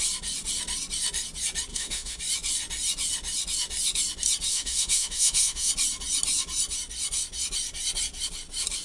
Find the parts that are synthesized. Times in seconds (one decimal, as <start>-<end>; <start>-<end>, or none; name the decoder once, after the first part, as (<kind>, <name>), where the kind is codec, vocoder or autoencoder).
1.7-2.2 (autoencoder, DAC-VAE); 4.5-5.7